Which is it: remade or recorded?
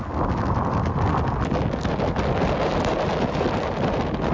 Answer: recorded